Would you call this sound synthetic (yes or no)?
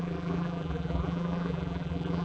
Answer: yes